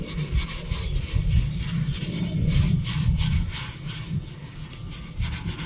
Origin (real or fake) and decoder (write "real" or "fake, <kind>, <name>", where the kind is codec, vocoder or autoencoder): real